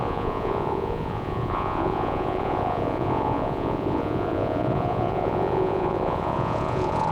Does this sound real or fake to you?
fake